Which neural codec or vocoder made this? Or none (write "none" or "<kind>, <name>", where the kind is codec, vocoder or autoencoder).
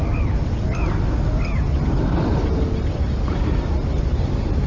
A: none